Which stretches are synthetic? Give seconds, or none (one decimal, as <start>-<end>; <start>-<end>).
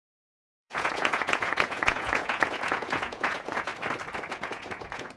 0.0-3.7; 4.3-5.2